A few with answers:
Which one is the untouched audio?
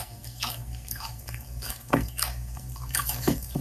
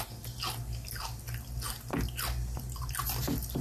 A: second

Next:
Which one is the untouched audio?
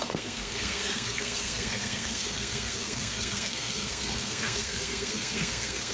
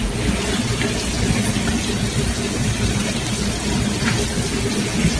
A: second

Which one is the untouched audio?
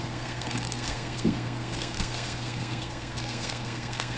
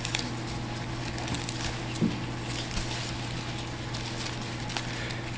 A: second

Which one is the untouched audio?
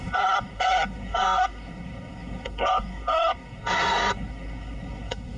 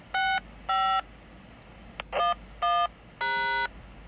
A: second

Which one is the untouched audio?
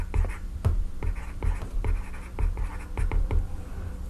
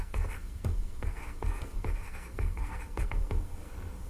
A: first